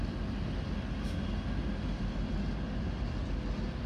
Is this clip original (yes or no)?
yes